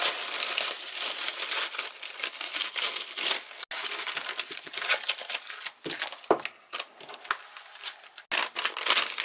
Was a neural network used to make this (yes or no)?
no